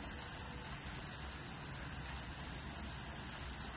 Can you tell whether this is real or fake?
real